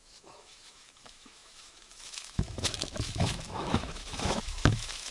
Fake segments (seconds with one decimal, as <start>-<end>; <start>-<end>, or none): 0.0-5.1